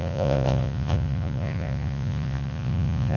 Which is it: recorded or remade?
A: remade